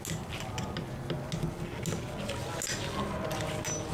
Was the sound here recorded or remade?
recorded